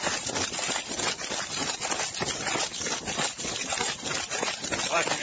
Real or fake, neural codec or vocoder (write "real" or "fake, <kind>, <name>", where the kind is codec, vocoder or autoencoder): real